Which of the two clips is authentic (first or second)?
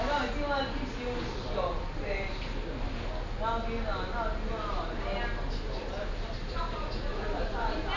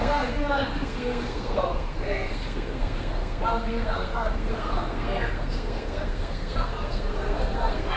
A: first